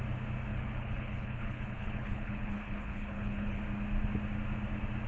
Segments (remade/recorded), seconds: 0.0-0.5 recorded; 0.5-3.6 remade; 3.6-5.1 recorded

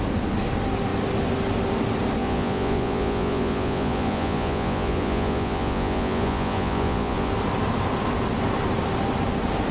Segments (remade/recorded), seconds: 0.0-2.2 recorded; 2.2-7.3 remade; 7.3-9.7 recorded

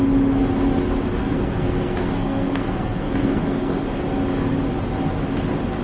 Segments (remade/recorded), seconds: 0.0-1.2 recorded; 1.2-4.0 remade; 4.0-5.8 recorded

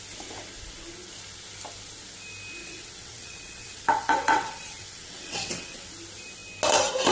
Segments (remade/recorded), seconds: 0.0-2.6 recorded; 2.6-5.9 remade; 5.9-7.1 recorded

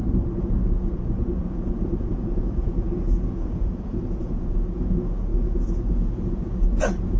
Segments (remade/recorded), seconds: 0.0-7.2 remade

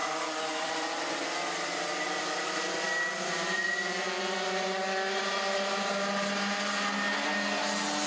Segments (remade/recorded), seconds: 0.0-8.1 recorded

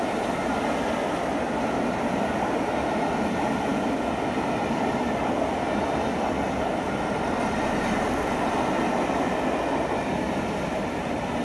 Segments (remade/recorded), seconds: 0.0-11.4 recorded

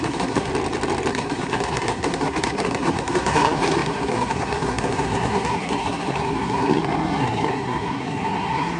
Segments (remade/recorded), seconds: 0.0-0.5 remade; 0.5-1.1 recorded; 1.1-8.8 remade